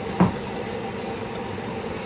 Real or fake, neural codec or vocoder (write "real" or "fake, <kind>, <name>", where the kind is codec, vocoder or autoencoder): real